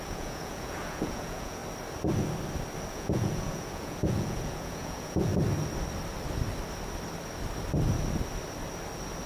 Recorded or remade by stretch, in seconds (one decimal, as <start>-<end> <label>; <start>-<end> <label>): 0.0-1.6 remade; 1.6-2.9 recorded; 2.9-5.3 remade; 5.3-9.3 recorded